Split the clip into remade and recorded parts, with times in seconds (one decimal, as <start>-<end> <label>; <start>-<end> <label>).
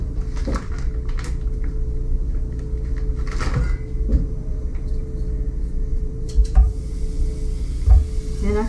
0.0-4.1 recorded; 4.1-5.1 remade; 5.1-5.9 recorded; 5.9-7.0 remade; 7.0-8.7 recorded